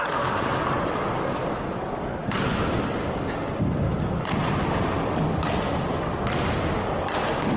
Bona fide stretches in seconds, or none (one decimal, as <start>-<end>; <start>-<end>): 0.0-7.6